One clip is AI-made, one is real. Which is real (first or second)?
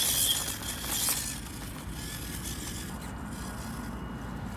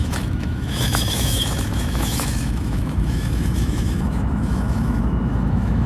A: first